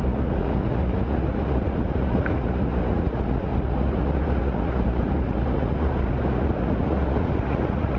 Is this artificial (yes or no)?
yes